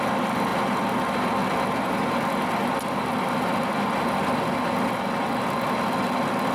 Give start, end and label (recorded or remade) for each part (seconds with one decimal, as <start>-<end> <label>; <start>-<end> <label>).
0.0-6.5 recorded